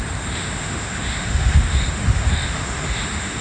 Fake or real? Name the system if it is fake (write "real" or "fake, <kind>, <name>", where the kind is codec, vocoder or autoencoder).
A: fake, autoencoder, DAC-VAE